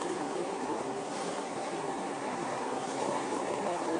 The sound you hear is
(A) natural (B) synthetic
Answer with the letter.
B